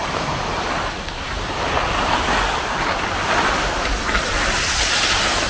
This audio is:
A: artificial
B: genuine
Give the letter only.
A